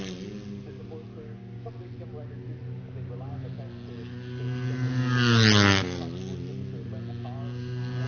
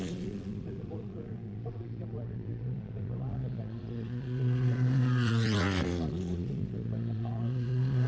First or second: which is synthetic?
second